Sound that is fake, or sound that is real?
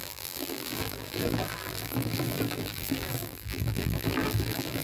fake